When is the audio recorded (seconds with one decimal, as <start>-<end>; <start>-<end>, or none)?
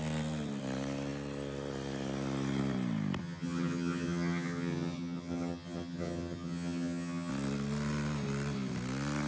0.0-3.2; 7.3-9.3